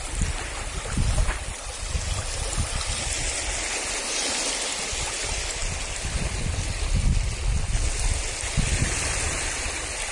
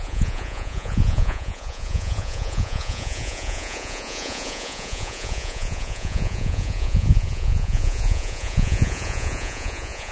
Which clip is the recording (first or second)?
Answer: first